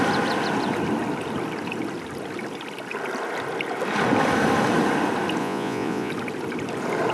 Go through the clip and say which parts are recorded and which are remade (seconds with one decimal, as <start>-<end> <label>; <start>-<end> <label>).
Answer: 0.0-5.4 recorded; 5.4-6.1 remade; 6.1-7.1 recorded